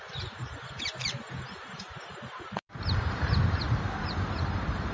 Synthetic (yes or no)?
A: yes